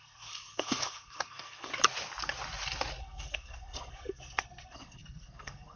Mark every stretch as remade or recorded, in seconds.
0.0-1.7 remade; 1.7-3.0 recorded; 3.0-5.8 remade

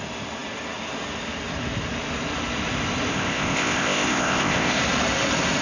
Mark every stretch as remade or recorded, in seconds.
0.0-3.1 recorded; 3.1-4.8 remade; 4.8-5.6 recorded

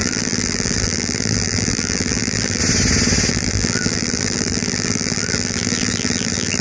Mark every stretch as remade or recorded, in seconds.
0.0-2.6 remade; 2.6-3.3 recorded; 3.3-6.6 remade

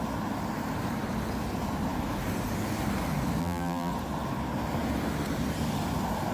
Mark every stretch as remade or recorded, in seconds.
0.0-3.4 recorded; 3.4-3.9 remade; 3.9-6.3 recorded